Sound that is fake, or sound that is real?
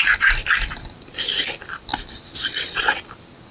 real